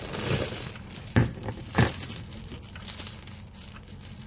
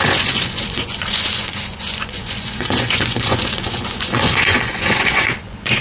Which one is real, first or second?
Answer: first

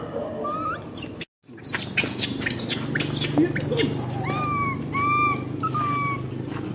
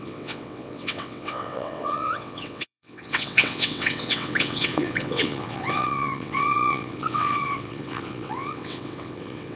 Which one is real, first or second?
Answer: first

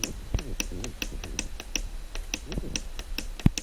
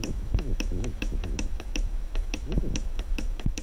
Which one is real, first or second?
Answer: first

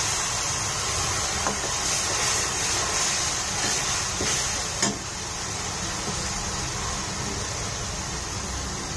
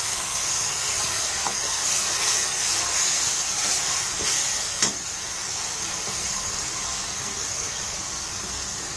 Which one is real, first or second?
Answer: first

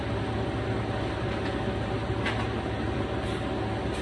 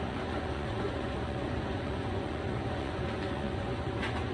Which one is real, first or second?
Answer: first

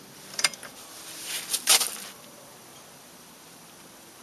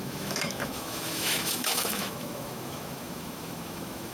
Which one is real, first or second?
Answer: first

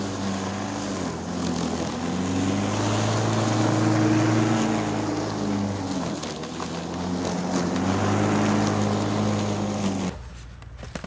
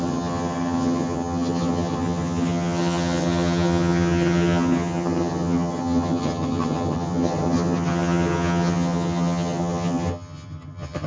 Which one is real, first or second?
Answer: first